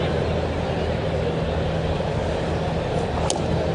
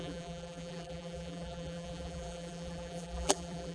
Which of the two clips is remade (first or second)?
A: second